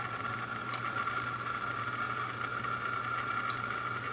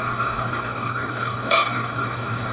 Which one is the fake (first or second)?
second